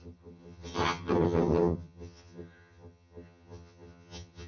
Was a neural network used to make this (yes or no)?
yes